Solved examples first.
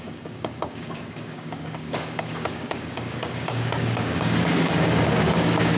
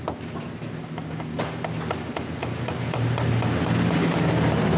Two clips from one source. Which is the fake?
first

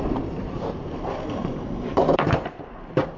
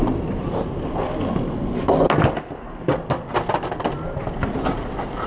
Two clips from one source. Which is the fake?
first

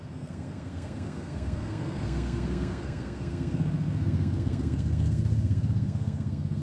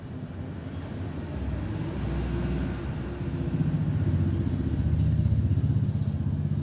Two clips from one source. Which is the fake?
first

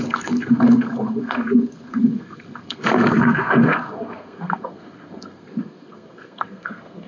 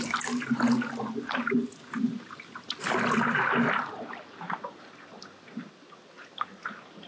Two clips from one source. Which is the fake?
first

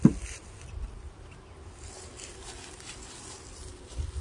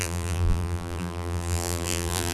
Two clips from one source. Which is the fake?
second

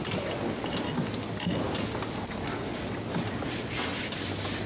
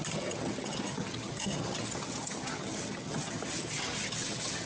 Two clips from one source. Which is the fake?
second